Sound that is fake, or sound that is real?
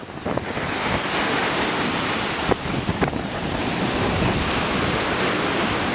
fake